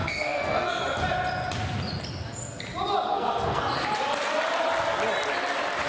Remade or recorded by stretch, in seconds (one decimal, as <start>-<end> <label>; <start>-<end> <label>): 0.0-0.8 remade; 0.8-3.1 recorded; 3.1-3.6 remade; 3.6-5.9 recorded